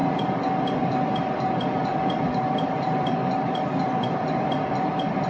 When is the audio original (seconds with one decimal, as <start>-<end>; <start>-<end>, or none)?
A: 0.0-1.9; 4.7-5.3